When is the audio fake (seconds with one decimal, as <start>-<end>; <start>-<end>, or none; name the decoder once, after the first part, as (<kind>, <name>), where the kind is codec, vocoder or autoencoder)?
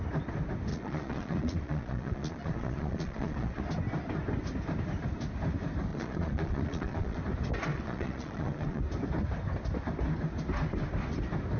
0.7-3.6 (vocoder, Vocos); 5.9-7.2; 7.7-8.8